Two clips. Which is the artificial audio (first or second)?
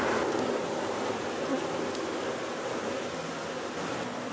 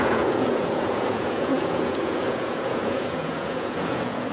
second